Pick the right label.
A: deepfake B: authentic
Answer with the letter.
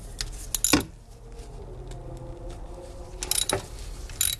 B